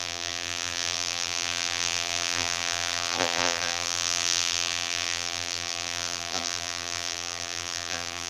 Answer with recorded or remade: remade